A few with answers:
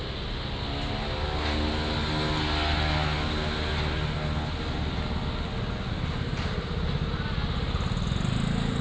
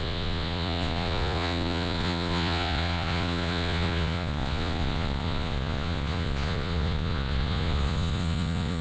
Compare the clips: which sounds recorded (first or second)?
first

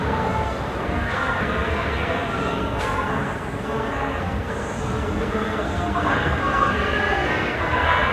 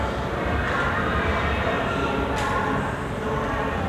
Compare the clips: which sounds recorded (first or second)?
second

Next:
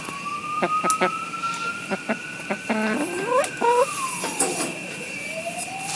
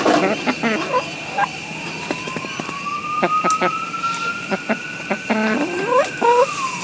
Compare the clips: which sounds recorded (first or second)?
first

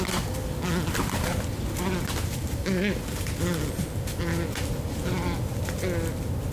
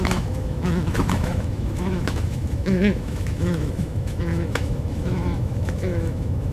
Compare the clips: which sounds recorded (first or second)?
first